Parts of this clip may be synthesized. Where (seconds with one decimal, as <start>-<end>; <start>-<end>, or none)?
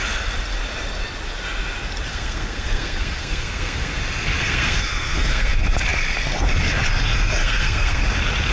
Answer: 2.1-4.0; 4.4-5.5; 7.4-8.0